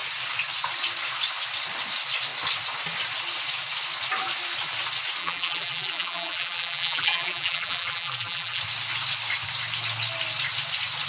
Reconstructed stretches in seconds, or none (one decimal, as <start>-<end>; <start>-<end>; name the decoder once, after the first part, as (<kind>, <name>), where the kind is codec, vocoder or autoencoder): 5.2-8.6 (vocoder, BigVGAN v2)